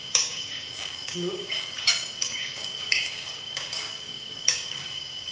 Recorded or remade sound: remade